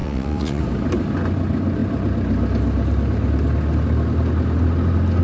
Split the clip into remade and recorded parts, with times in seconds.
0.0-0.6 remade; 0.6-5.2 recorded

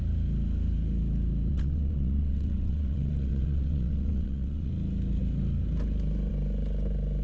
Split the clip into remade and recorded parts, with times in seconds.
0.0-1.5 recorded; 1.5-4.7 remade; 4.7-7.2 recorded

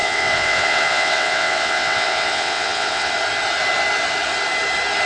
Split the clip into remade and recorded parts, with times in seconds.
0.0-3.1 remade; 3.1-5.1 recorded

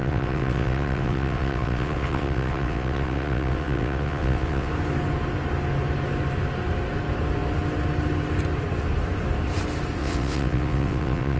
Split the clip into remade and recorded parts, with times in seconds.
0.0-4.7 remade; 4.7-10.0 recorded; 10.0-11.4 remade